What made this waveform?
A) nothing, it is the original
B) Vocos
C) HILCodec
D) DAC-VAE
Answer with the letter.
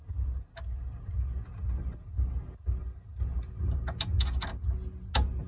A